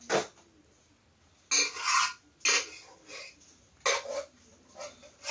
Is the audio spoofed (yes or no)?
no